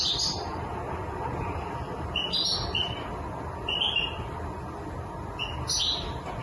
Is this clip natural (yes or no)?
yes